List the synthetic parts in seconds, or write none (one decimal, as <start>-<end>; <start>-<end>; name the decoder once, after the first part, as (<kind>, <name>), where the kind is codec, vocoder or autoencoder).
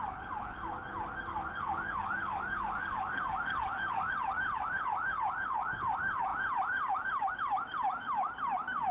1.3-4.1 (codec, DAC)